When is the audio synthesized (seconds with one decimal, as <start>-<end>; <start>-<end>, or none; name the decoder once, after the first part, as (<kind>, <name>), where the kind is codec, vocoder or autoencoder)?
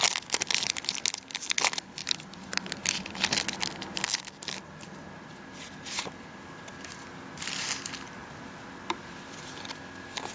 8.2-9.7 (vocoder, BigVGAN v2)